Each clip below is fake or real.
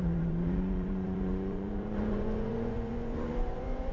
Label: fake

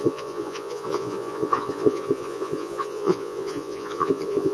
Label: fake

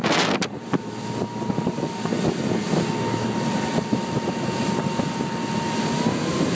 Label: real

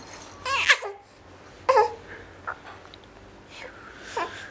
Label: real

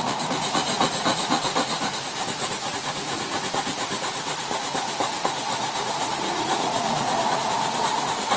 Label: fake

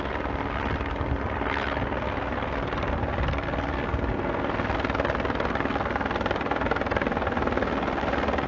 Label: real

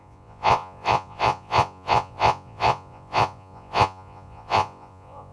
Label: fake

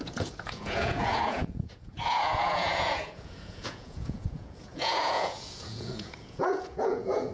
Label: fake